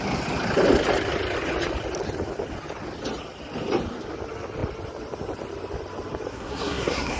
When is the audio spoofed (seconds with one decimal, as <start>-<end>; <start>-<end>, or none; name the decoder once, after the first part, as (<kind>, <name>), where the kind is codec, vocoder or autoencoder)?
6.3-7.2 (codec, SNAC)